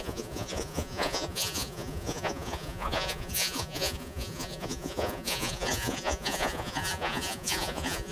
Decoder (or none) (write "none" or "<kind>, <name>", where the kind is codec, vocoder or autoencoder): vocoder, Vocos